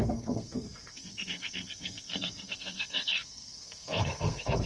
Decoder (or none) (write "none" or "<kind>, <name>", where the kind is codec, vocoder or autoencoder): codec, SNAC